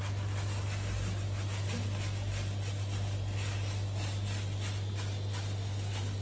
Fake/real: real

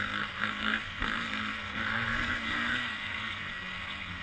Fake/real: fake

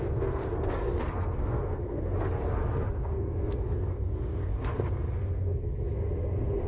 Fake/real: fake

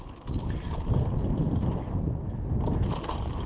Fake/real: real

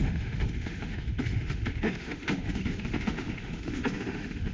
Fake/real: fake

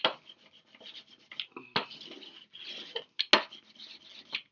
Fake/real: real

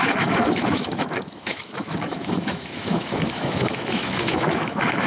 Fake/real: fake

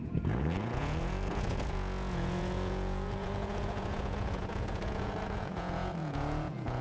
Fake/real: fake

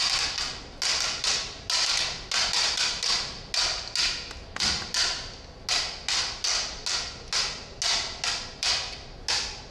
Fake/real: real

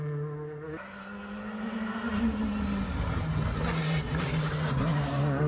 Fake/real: real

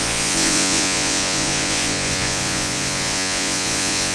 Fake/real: fake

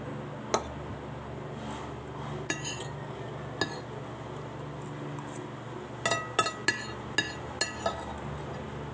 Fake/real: real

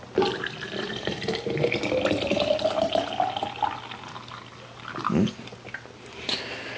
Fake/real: real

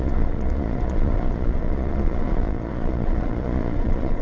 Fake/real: fake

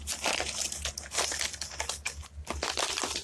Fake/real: real